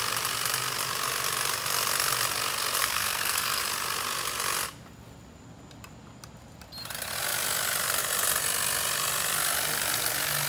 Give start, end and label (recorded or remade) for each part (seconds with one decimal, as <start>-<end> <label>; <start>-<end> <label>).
0.0-2.8 recorded; 2.8-3.6 remade; 3.6-10.5 recorded